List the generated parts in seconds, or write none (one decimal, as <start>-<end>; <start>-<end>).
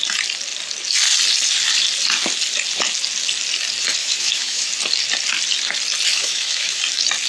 4.0-4.7; 6.1-6.8